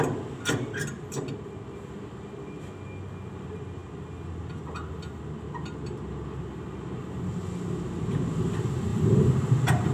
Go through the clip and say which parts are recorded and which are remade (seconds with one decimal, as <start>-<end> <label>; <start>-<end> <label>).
0.0-8.9 recorded; 8.9-9.9 remade